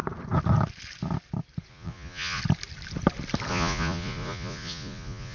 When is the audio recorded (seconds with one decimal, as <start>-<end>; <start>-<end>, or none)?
0.0-1.7; 2.4-3.5